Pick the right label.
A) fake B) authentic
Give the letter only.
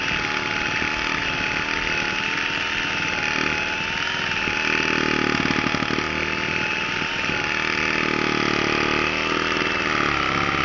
B